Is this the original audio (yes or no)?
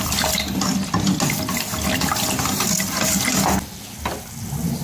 yes